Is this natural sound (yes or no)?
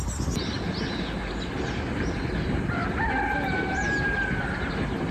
yes